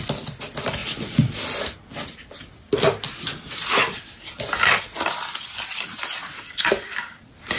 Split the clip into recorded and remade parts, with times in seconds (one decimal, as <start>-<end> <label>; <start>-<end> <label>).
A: 0.0-7.6 recorded